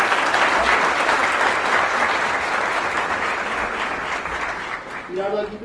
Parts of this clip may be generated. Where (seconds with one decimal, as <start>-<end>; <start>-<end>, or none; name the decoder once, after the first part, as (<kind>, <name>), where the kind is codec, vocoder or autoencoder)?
none